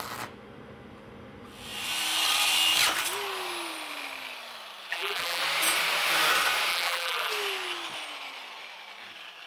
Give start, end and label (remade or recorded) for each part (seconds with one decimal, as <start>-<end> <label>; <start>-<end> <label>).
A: 0.0-4.9 recorded; 4.9-5.4 remade; 5.4-6.7 recorded; 6.7-7.3 remade; 7.3-9.5 recorded